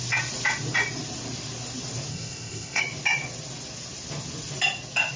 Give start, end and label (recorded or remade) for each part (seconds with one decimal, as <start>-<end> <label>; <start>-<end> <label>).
0.0-2.1 recorded; 2.1-2.8 remade; 2.8-5.2 recorded